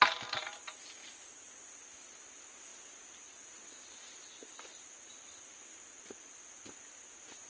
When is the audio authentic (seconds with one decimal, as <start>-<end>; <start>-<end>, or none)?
0.0-7.5